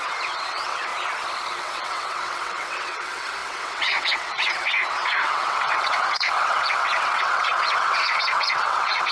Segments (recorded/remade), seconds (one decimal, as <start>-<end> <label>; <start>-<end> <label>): 0.0-0.9 remade; 0.9-1.6 recorded; 1.6-9.1 remade